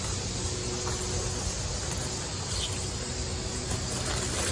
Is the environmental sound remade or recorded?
recorded